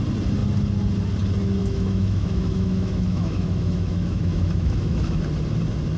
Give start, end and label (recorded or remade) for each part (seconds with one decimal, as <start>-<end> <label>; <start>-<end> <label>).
0.0-1.6 recorded; 1.6-5.2 remade; 5.2-6.0 recorded